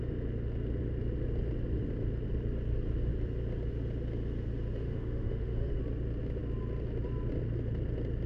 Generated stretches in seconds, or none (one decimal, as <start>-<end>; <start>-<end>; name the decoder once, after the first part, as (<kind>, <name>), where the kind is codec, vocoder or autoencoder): 4.7-5.8 (autoencoder, DAC-VAE)